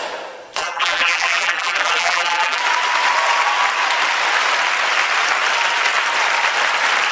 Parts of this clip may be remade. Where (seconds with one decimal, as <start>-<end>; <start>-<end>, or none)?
0.6-2.6